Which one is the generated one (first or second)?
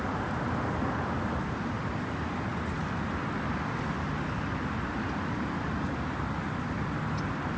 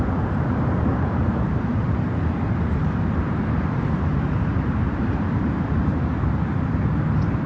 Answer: second